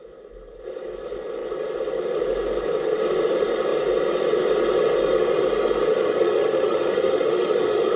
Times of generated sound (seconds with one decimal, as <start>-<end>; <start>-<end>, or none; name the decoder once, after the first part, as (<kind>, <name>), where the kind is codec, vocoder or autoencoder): 5.9-8.0 (autoencoder, DAC-VAE)